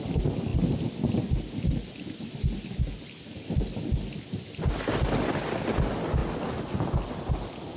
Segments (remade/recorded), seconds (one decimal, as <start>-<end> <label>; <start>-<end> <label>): 0.0-7.8 recorded